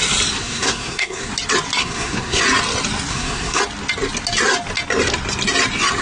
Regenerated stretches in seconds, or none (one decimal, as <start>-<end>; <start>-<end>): 0.4-1.3; 1.8-2.4; 3.1-3.6